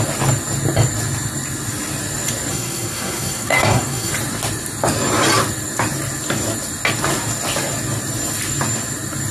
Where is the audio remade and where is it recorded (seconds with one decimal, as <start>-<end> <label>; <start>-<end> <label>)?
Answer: 0.0-2.5 recorded; 2.5-4.1 remade; 4.1-9.3 recorded